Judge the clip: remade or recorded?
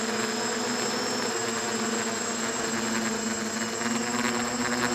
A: recorded